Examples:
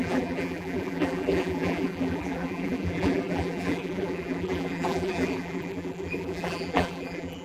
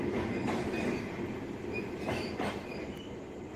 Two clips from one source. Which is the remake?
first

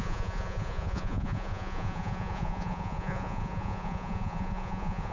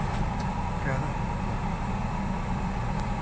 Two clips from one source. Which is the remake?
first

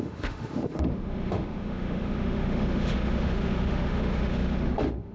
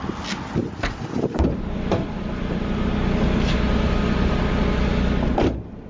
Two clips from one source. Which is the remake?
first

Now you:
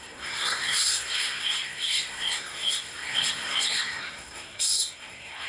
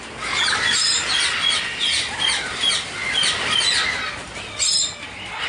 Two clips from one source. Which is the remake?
first